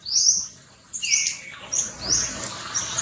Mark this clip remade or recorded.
recorded